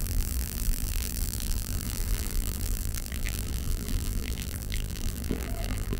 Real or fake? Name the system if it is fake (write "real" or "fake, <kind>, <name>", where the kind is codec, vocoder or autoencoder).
fake, vocoder, BigVGAN v2